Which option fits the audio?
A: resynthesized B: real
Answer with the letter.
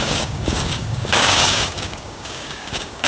A